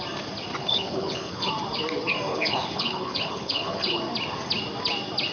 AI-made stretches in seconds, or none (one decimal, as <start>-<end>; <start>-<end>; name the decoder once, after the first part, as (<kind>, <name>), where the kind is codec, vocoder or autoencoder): 0.6-1.5 (codec, HILCodec); 2.3-4.0